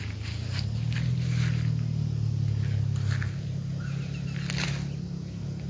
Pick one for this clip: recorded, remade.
recorded